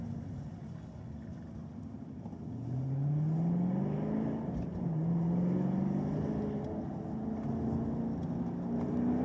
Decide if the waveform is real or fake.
real